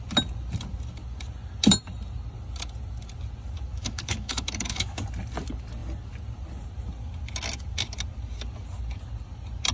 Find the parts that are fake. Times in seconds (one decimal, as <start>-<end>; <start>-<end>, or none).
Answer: 3.7-5.0